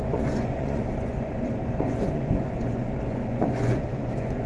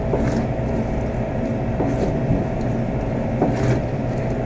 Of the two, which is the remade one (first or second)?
first